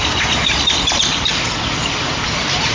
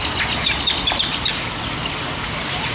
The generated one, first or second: first